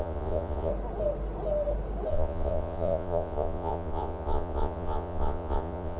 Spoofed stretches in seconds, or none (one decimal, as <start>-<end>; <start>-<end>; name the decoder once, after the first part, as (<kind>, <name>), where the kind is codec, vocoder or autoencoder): 0.0-0.7 (vocoder, Vocos); 2.1-6.0